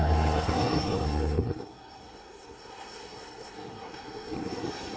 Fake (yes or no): yes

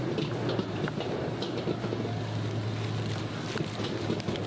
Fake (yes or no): no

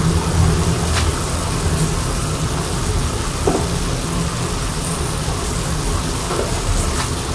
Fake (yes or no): no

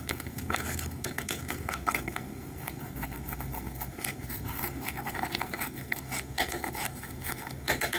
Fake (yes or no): yes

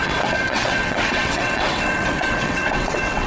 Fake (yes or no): yes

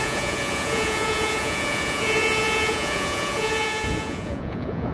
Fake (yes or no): yes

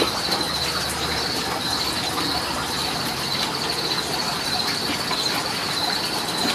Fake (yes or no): no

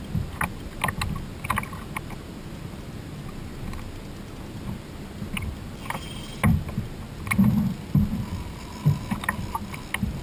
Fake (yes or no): no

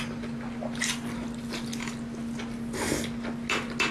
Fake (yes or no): no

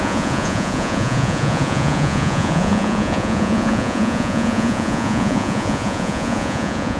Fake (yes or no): yes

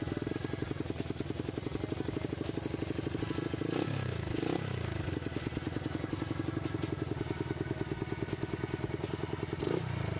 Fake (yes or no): no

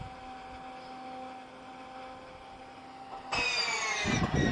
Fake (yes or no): no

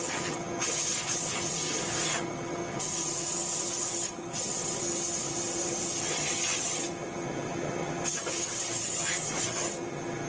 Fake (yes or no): yes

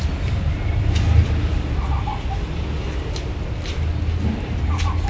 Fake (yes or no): no